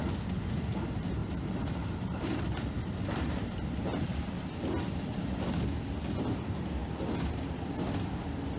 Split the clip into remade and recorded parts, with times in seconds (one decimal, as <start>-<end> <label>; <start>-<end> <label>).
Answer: 0.0-1.2 recorded; 1.2-4.8 remade; 4.8-6.8 recorded; 6.8-7.6 remade; 7.6-8.6 recorded